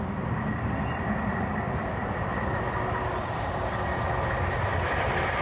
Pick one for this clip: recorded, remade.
remade